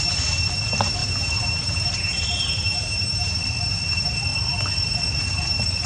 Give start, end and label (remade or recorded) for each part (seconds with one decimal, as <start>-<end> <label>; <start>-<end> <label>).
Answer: 0.0-1.0 recorded; 1.0-3.3 remade; 3.3-5.9 recorded